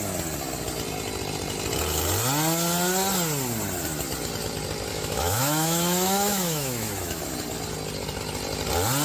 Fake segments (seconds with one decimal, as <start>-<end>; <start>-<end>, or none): 4.9-7.2